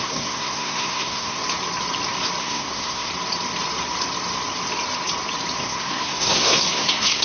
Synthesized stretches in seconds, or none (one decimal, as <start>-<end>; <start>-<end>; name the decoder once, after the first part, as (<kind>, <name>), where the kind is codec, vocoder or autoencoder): 0.0-1.4 (codec, SNAC); 2.4-3.1; 5.6-7.2